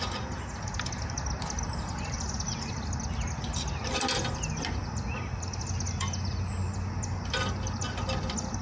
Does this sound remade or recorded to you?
recorded